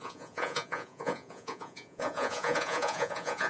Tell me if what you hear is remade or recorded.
remade